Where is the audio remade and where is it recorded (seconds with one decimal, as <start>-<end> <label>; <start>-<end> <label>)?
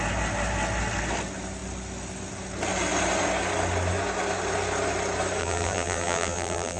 0.0-5.4 recorded; 5.4-6.8 remade